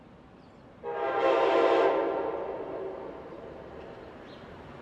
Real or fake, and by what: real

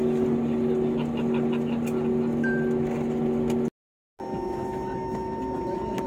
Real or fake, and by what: real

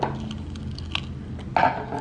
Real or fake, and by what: real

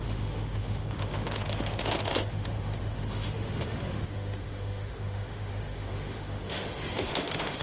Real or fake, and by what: fake, autoencoder, DAC-VAE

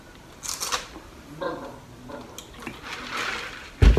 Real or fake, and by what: real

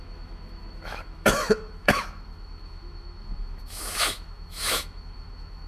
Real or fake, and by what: fake, autoencoder, DAC-VAE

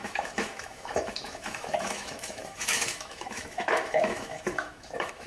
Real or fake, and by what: fake, autoencoder, DAC-VAE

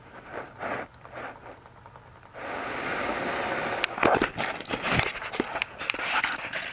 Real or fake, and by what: real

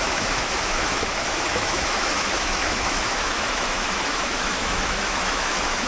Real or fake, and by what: fake, autoencoder, DAC-VAE